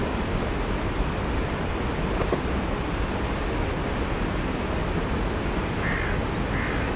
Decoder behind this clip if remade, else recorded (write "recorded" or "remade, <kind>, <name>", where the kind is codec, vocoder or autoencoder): recorded